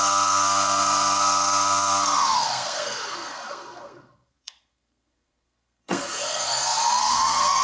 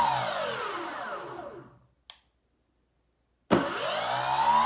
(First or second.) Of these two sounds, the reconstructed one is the first